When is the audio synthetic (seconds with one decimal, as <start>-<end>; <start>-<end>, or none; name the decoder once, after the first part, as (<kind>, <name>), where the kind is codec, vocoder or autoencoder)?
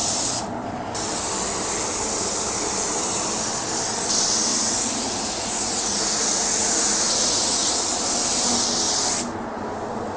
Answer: 4.5-7.7 (vocoder, Vocos)